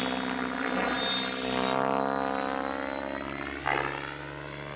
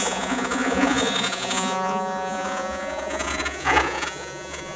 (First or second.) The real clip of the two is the first